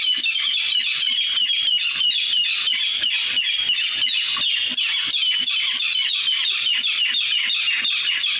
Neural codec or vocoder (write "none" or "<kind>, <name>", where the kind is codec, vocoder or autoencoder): none